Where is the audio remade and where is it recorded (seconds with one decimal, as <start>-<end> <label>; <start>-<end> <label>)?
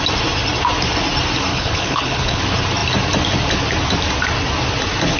0.0-1.5 recorded; 1.5-2.4 remade; 2.4-5.2 recorded